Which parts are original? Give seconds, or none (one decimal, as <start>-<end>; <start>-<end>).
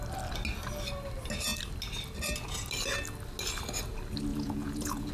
0.0-4.3